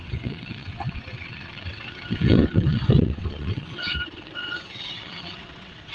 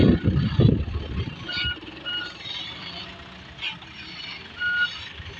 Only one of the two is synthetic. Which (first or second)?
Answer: first